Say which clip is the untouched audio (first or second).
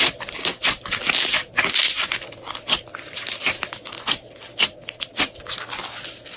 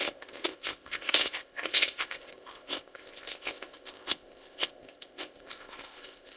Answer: first